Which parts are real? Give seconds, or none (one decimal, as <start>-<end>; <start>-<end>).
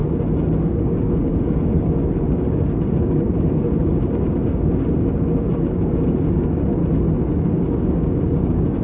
0.0-0.6; 6.8-7.4